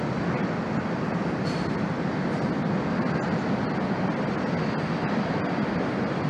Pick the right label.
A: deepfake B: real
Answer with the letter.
B